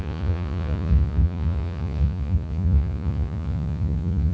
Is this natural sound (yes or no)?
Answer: no